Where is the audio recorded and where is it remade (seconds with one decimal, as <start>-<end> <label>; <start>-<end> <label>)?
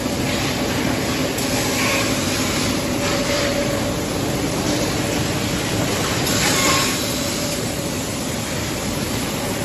0.0-1.2 remade; 1.2-2.5 recorded; 2.5-9.6 remade